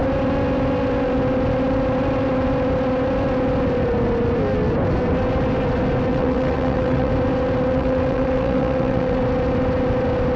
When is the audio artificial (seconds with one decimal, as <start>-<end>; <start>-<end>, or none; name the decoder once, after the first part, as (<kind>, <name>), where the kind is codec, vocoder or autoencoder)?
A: 6.1-7.1 (vocoder, WaveNeXt); 7.7-9.2